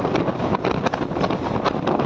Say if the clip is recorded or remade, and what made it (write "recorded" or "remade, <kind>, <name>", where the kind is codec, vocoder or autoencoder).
recorded